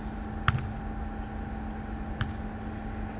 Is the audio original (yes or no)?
yes